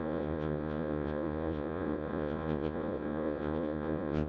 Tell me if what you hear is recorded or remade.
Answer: remade